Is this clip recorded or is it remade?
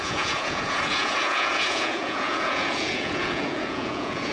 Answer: remade